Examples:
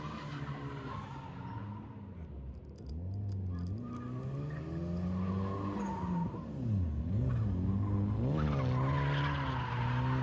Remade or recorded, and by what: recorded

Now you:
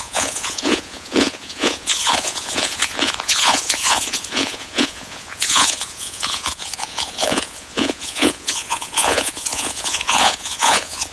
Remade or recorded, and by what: remade, vocoder, Vocos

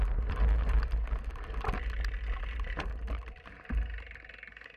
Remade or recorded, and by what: recorded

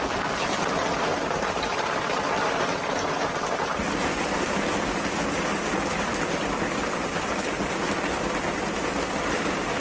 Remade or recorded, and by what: recorded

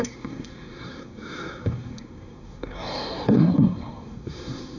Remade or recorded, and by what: remade, codec, SNAC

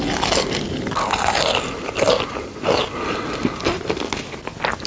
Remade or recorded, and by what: recorded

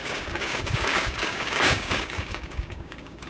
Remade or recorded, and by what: remade, codec, DAC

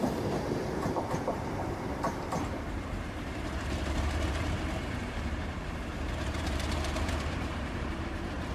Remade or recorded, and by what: remade, vocoder, BigVGAN v2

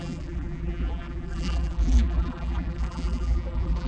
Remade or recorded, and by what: remade, vocoder, BigVGAN v2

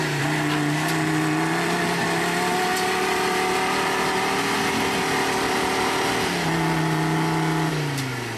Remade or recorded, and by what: recorded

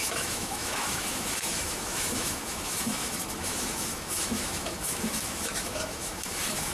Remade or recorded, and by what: remade, autoencoder, DAC-VAE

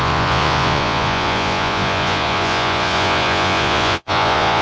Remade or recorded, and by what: remade, vocoder, Vocos